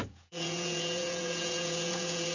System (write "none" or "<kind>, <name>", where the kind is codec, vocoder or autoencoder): vocoder, Vocos